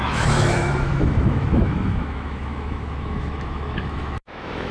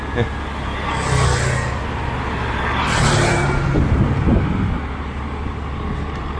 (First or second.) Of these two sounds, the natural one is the second